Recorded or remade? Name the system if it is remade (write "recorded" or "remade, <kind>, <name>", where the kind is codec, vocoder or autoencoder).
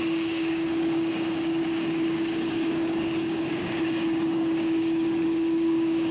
remade, codec, DAC